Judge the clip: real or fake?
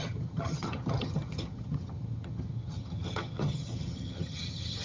fake